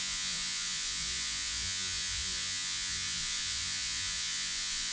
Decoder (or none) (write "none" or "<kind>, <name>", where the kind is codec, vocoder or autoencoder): vocoder, Vocos